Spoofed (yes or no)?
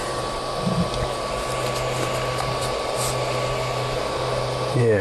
no